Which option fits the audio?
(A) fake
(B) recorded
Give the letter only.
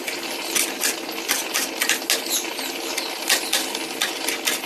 B